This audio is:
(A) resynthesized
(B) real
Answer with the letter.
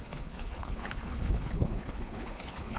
A